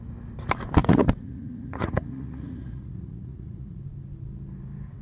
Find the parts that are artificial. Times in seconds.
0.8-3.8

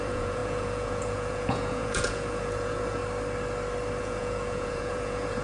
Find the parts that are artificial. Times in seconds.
0.0-3.0; 4.0-5.4

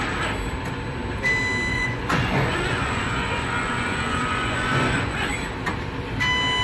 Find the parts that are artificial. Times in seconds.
1.7-5.3

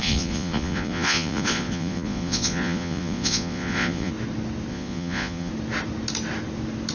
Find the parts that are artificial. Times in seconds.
0.0-4.1; 4.7-5.5

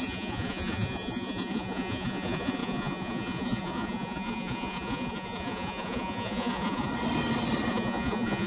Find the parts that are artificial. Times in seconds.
0.0-6.9; 7.7-8.5

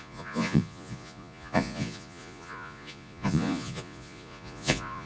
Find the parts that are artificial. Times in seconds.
0.0-5.1